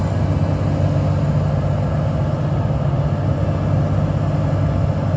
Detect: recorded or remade recorded